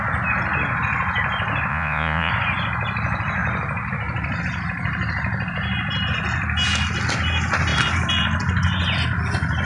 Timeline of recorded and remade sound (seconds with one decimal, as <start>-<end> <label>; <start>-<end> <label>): 0.0-1.7 recorded; 1.7-2.3 remade; 2.3-9.7 recorded